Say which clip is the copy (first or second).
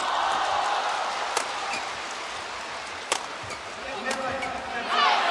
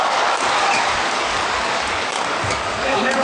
second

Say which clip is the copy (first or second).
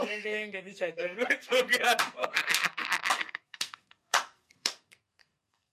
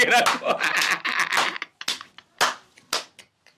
first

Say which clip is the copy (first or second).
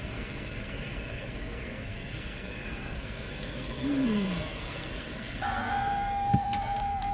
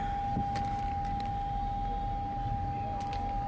first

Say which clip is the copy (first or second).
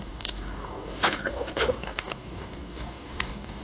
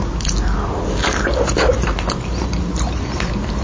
first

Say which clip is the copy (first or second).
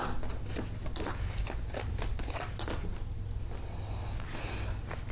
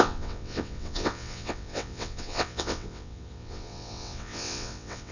second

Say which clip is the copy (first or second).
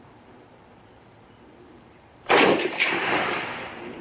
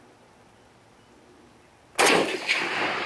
first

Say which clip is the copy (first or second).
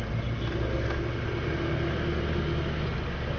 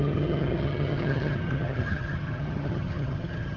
second